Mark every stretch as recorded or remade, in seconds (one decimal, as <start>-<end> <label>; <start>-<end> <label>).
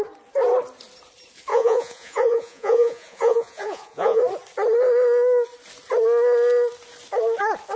0.0-1.5 recorded; 1.5-4.2 remade; 4.2-7.8 recorded